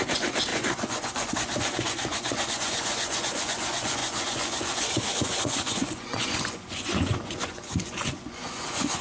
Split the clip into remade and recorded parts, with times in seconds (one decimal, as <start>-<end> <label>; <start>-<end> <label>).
0.0-9.0 remade